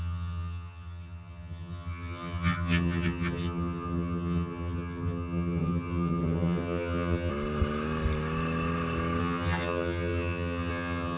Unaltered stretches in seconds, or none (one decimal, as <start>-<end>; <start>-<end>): 7.3-9.2